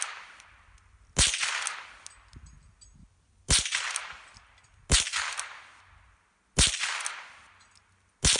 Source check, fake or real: real